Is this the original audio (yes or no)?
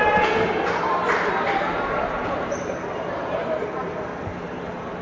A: no